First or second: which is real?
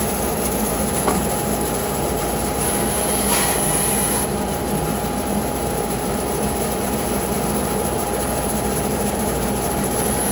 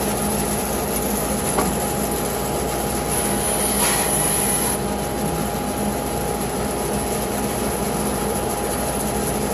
second